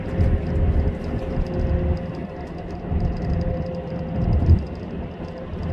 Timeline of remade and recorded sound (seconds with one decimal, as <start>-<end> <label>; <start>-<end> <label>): 0.0-2.2 recorded; 2.2-5.7 remade